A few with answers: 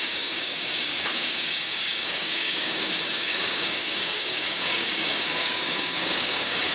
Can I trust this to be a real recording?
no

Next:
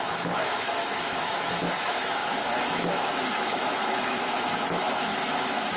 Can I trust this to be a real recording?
no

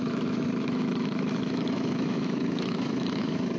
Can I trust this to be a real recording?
no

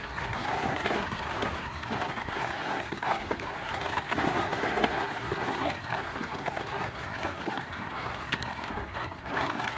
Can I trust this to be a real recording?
no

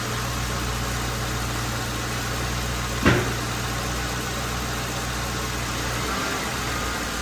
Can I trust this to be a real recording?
yes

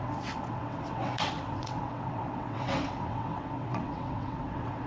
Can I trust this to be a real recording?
no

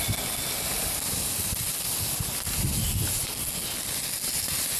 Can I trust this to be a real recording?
yes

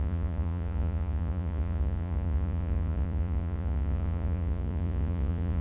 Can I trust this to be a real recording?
no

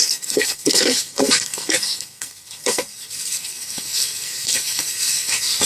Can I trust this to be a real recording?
no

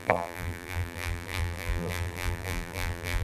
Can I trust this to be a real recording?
no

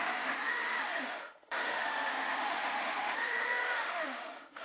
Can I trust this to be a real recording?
no